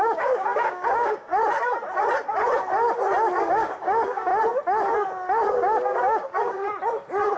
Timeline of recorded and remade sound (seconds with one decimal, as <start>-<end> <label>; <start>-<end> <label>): 0.0-1.3 remade; 1.3-3.4 recorded; 3.4-4.3 remade; 4.3-5.5 recorded; 5.5-6.6 remade; 6.6-7.4 recorded